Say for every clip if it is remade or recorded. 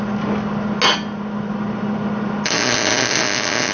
recorded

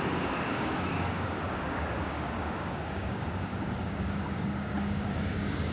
remade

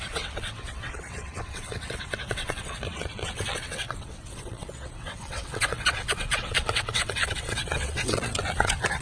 remade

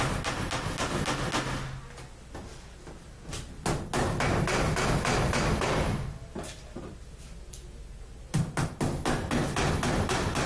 recorded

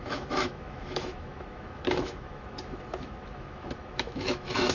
remade